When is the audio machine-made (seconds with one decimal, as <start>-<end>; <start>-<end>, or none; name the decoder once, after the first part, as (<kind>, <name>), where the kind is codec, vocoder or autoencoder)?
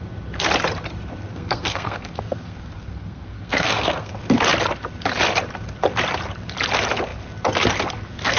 1.3-4.1 (codec, SNAC)